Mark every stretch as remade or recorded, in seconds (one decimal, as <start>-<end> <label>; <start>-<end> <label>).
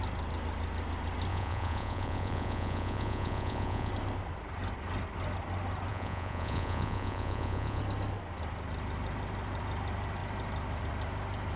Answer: 0.0-1.3 recorded; 1.3-3.9 remade; 3.9-5.9 recorded; 5.9-7.8 remade; 7.8-11.6 recorded